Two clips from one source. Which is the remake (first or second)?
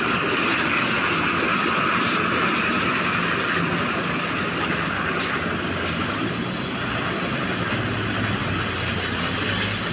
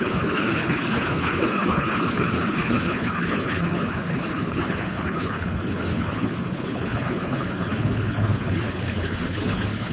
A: second